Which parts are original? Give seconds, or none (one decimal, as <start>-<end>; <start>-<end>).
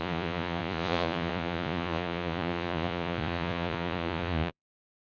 none